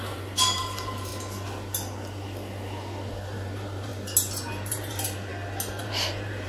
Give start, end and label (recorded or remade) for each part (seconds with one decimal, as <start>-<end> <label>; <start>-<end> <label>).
0.0-1.1 remade; 1.1-3.1 recorded; 3.1-3.9 remade; 3.9-4.5 recorded; 4.5-5.3 remade; 5.3-5.8 recorded; 5.8-6.5 remade